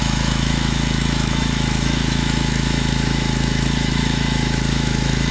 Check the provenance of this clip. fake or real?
fake